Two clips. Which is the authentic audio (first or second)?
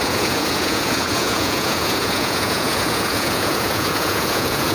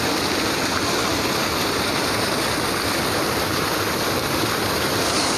second